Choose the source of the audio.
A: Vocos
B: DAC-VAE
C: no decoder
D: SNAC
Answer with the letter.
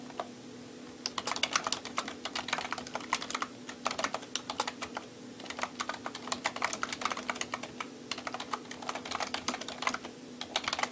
C